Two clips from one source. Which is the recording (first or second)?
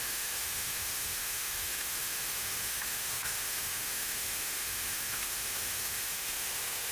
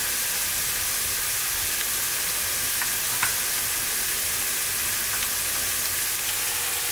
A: second